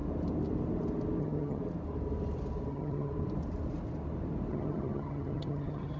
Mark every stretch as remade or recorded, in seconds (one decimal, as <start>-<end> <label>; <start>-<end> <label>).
0.0-1.2 recorded; 1.2-1.6 remade; 1.6-2.7 recorded; 2.7-3.1 remade; 3.1-4.5 recorded; 4.5-6.0 remade